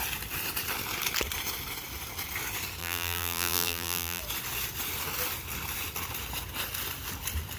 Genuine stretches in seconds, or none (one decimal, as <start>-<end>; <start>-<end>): 0.0-2.8; 4.2-7.6